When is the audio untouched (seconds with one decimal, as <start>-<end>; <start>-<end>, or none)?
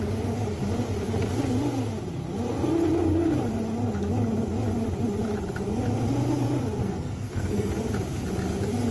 0.0-6.8; 7.7-8.9